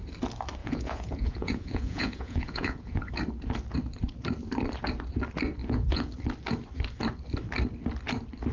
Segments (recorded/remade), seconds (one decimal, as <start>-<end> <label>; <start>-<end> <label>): 0.0-0.6 recorded; 0.6-3.1 remade; 3.1-5.6 recorded; 5.6-6.1 remade; 6.1-8.5 recorded